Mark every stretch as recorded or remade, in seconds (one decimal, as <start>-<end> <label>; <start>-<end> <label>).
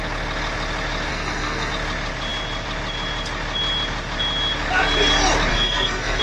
0.0-1.1 recorded; 1.1-1.7 remade; 1.7-5.5 recorded; 5.5-6.2 remade